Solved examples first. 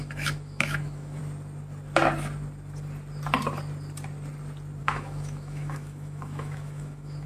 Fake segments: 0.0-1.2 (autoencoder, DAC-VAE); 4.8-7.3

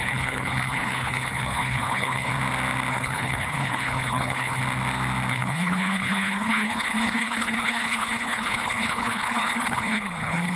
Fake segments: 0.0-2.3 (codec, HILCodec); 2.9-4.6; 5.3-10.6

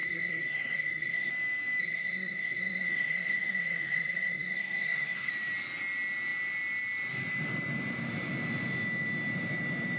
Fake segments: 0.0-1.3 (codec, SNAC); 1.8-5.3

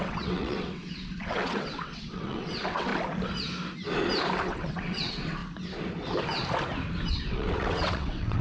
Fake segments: 0.0-2.9 (vocoder, WaveNeXt); 4.4-5.4; 7.1-8.4

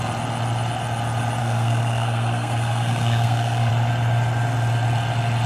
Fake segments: 1.4-3.7 (codec, SNAC)